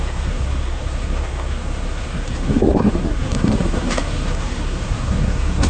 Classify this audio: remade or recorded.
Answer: remade